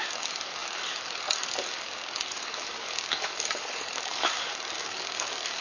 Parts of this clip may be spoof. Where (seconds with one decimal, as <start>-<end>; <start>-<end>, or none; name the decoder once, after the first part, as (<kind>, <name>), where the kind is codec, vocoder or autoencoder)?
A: 0.0-5.6 (codec, DAC)